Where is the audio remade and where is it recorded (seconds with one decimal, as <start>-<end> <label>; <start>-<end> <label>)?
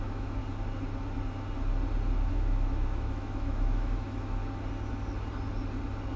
0.0-0.4 remade; 0.4-2.3 recorded; 2.3-4.4 remade; 4.4-6.2 recorded